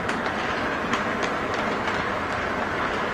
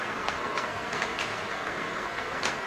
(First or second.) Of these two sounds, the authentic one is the first